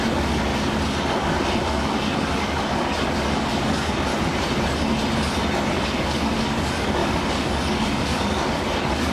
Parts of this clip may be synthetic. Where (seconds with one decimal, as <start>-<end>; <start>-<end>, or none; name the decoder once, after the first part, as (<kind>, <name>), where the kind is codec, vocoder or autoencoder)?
0.0-0.5 (codec, DAC); 1.0-4.1; 5.7-9.1